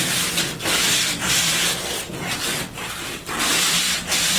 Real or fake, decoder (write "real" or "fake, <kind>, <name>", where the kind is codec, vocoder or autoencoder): fake, vocoder, BigVGAN v2